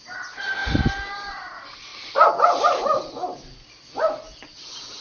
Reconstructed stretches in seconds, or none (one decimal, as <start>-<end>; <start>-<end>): none